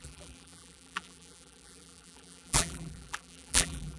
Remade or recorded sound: remade